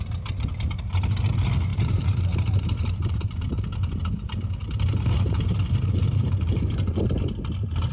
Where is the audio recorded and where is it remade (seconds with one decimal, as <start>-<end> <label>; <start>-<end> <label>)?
0.0-1.7 recorded; 1.7-3.5 remade; 3.5-4.6 recorded; 4.6-5.5 remade; 5.5-6.0 recorded; 6.0-7.1 remade; 7.1-7.9 recorded